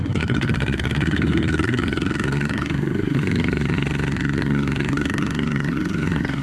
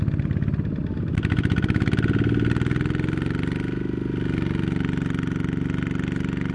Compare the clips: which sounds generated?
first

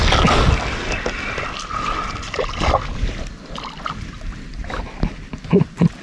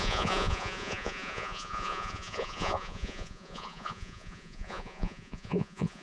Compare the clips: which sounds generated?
second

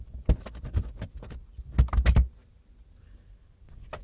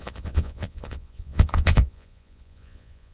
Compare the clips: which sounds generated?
second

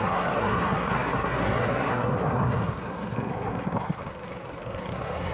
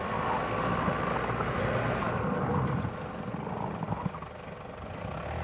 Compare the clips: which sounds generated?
first